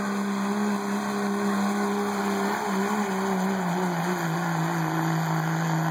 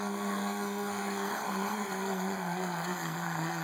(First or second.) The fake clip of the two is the second